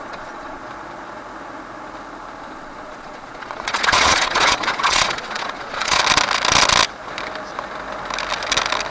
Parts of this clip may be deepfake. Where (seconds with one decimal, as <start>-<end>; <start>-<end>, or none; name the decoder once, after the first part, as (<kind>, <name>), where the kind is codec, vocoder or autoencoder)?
0.0-0.6 (vocoder, Vocos); 2.4-6.0